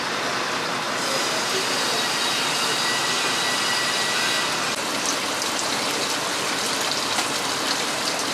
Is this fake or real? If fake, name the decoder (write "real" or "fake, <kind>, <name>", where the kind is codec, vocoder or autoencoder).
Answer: real